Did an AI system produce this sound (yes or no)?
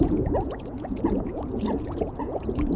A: yes